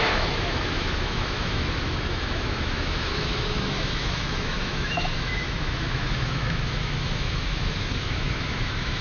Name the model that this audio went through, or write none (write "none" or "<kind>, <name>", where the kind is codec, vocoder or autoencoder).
autoencoder, DAC-VAE